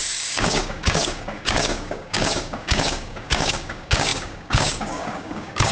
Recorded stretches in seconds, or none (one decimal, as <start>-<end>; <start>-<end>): none